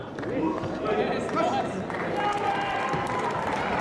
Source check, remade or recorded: recorded